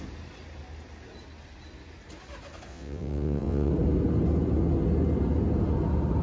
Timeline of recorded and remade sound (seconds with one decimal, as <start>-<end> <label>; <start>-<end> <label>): 0.0-2.7 recorded; 2.7-3.7 remade; 3.7-6.2 recorded